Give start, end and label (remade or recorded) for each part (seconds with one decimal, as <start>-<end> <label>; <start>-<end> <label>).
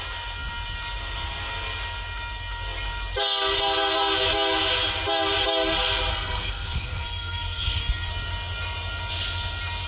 0.0-6.1 recorded; 6.1-8.1 remade; 8.1-9.9 recorded